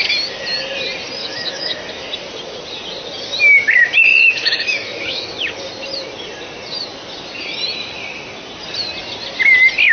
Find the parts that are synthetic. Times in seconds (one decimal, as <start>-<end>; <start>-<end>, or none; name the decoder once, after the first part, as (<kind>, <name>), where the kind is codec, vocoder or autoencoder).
1.2-1.9 (autoencoder, DAC-VAE); 4.1-5.6